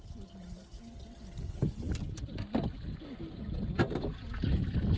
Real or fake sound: real